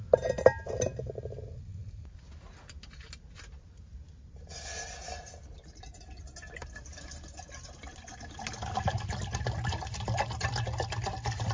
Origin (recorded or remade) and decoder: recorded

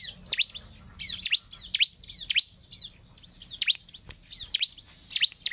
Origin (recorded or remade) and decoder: recorded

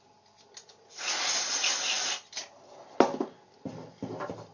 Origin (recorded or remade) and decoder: recorded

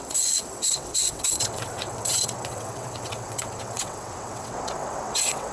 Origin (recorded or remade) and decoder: remade, vocoder, WaveNeXt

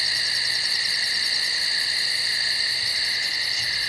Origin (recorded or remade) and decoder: recorded